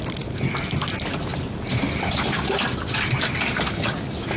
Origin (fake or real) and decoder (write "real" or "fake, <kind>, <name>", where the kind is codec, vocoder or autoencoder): real